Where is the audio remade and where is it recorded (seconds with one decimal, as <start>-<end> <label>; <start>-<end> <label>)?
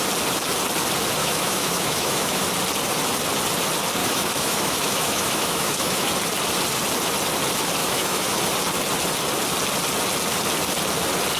0.0-1.2 recorded; 1.2-2.5 remade; 2.5-4.0 recorded; 4.0-6.1 remade; 6.1-7.8 recorded; 7.8-8.4 remade; 8.4-11.4 recorded